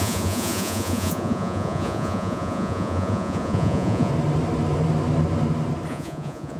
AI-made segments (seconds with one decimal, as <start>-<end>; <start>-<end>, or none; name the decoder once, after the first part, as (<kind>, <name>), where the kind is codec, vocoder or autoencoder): 0.0-4.1 (vocoder, Vocos); 5.9-6.6